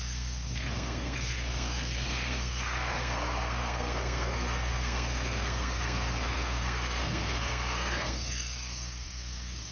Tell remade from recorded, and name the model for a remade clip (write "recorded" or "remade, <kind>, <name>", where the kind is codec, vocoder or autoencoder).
remade, codec, SNAC